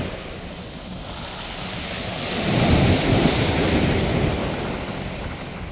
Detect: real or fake real